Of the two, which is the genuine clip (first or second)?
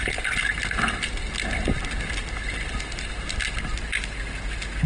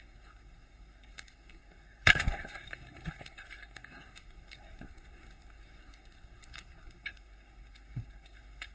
first